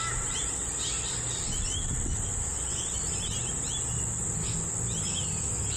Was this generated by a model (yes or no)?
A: no